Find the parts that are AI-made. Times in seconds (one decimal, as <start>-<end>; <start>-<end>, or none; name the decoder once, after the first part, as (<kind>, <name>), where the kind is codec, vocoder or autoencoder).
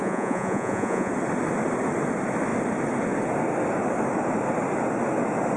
0.0-1.1 (vocoder, Vocos)